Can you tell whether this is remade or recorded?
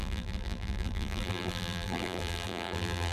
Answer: remade